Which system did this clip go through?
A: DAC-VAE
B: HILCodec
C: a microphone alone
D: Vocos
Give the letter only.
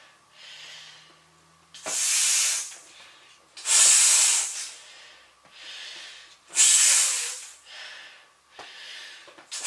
C